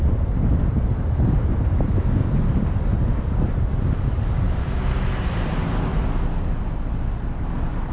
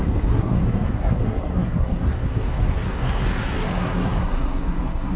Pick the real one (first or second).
first